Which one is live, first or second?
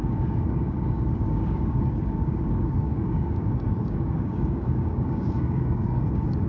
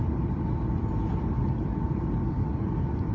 second